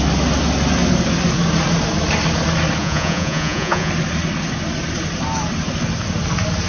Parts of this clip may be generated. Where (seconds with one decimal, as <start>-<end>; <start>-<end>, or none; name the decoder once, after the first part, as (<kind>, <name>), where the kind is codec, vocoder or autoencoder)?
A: 2.8-3.9 (vocoder, Vocos)